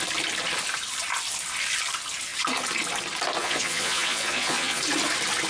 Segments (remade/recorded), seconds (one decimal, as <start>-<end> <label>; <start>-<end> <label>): 0.0-3.4 recorded; 3.4-4.8 remade; 4.8-5.5 recorded

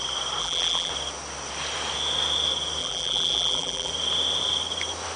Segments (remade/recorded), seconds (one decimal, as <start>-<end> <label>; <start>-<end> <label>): 0.0-0.4 recorded; 0.4-0.9 remade; 0.9-2.8 recorded; 2.8-3.9 remade; 3.9-5.2 recorded

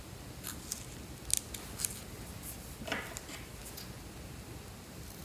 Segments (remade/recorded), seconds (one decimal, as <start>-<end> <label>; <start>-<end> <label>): 0.0-5.2 recorded

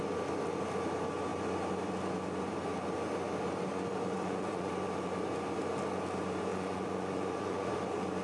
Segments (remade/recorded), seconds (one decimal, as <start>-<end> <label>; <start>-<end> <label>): 0.0-3.7 recorded; 3.7-4.7 remade; 4.7-6.5 recorded; 6.5-7.7 remade; 7.7-8.2 recorded

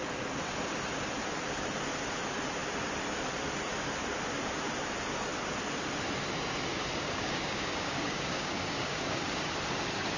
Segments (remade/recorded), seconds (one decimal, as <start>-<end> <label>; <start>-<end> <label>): 0.0-6.7 recorded; 6.7-9.5 remade; 9.5-10.2 recorded